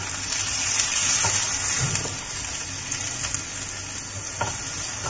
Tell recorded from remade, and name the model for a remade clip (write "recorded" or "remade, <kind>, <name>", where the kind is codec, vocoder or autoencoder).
recorded